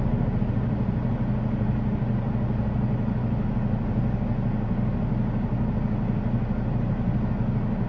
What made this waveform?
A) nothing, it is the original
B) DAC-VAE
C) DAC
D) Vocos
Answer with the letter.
A